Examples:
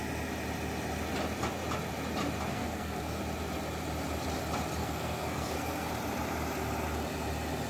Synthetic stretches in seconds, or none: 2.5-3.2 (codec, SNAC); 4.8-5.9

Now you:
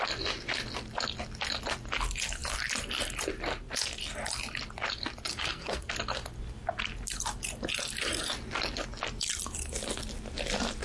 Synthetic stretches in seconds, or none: 5.3-5.9 (codec, SNAC)

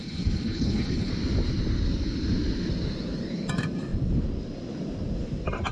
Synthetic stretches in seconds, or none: 0.0-1.1 (codec, HILCodec)

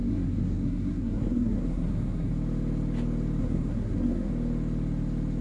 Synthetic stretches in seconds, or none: 0.0-2.3 (codec, SNAC); 3.4-4.3

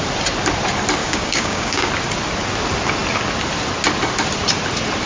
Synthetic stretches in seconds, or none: 1.0-1.9 (codec, DAC)

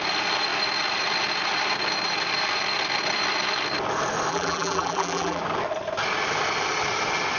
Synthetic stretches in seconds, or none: 4.3-5.4 (vocoder, BigVGAN v2)

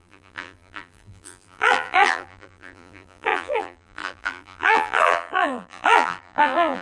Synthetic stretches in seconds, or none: 0.0-6.8 (vocoder, BigVGAN v2)